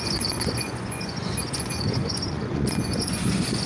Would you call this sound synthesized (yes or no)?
yes